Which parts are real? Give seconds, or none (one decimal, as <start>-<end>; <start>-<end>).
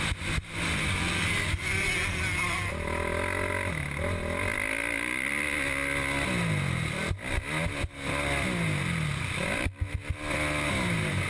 0.0-11.3